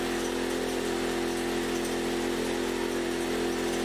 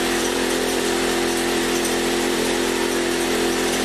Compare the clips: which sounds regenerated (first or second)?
second